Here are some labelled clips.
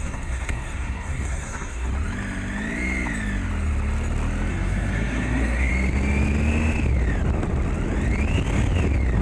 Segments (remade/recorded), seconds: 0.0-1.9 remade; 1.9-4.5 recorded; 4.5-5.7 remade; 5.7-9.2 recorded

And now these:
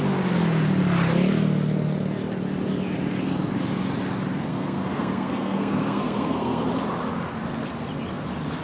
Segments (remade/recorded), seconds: 0.0-4.5 recorded; 4.5-6.7 remade; 6.7-8.6 recorded

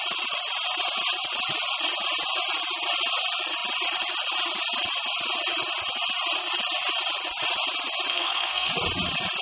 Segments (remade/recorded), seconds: 0.0-8.1 recorded; 8.1-8.7 remade; 8.7-9.4 recorded

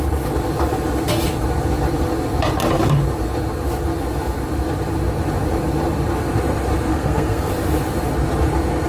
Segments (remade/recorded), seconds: 0.0-6.9 recorded; 6.9-7.5 remade; 7.5-8.9 recorded